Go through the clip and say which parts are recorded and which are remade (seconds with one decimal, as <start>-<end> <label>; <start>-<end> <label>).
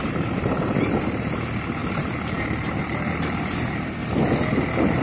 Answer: 0.0-1.0 remade; 1.0-1.8 recorded; 1.8-3.4 remade; 3.4-5.0 recorded